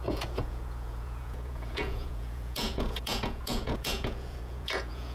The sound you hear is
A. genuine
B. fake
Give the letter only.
B